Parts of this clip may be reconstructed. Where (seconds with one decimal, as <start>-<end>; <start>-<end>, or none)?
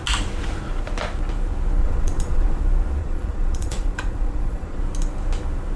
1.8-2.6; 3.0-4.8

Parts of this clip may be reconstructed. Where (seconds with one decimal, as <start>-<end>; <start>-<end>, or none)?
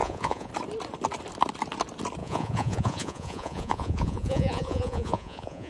0.0-0.5; 2.2-5.7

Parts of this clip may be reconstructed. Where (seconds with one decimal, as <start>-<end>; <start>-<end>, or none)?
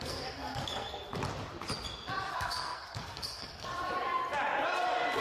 0.0-1.1; 2.3-3.7